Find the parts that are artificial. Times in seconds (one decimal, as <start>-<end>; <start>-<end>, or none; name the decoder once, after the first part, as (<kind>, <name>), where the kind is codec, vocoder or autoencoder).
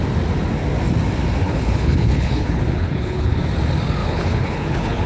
1.4-3.4 (codec, HILCodec); 4.0-5.1